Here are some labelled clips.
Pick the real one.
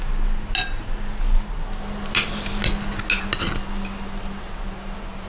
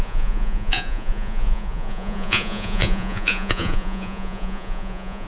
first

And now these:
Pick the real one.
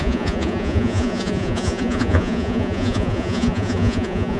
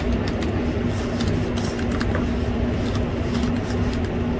second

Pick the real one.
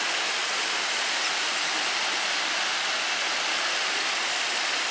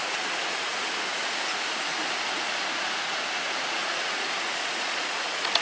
first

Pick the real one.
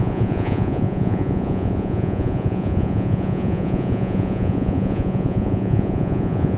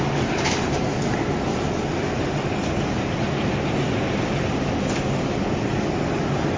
second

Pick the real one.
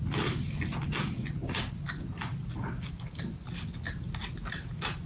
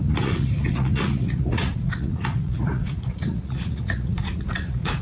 first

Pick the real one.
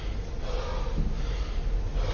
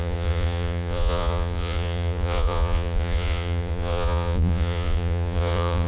first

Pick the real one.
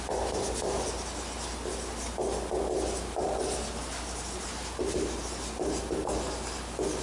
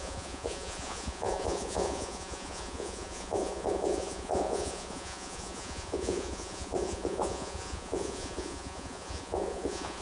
first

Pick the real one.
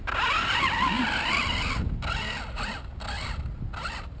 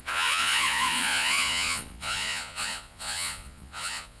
first